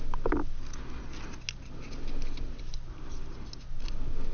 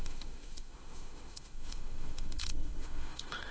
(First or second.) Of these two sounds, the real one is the first